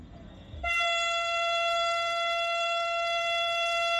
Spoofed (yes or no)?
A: yes